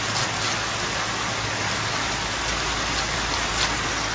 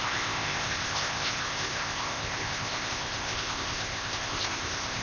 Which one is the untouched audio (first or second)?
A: first